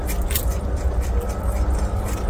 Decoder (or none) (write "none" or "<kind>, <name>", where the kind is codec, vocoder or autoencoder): vocoder, BigVGAN v2